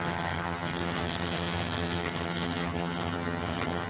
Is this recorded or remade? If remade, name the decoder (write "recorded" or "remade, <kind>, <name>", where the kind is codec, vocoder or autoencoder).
remade, vocoder, HiFi-GAN